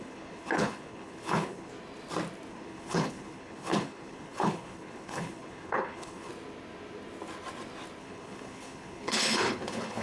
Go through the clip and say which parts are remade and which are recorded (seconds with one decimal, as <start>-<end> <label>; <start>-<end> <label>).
0.0-1.7 remade; 1.7-2.5 recorded; 2.5-6.3 remade; 6.3-8.0 recorded; 8.0-10.0 remade